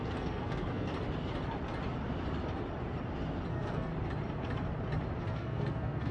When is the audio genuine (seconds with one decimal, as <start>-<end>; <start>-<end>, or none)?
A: 0.9-3.5; 3.9-5.2